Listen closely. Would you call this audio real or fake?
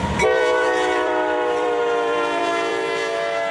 fake